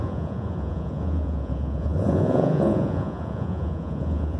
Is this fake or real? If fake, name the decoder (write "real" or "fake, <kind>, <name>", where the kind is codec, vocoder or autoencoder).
fake, vocoder, Vocos